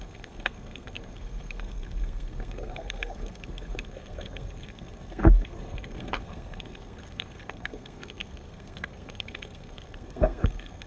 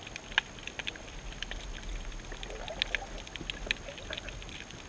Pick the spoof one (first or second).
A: first